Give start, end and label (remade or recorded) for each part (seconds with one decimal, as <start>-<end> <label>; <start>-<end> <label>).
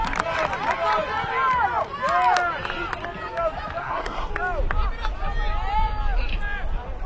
0.0-3.8 recorded; 3.8-4.3 remade; 4.3-7.1 recorded